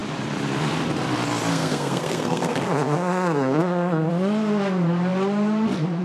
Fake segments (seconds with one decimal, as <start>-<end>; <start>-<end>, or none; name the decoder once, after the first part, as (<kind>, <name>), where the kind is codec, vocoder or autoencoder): 1.5-4.1 (codec, SNAC)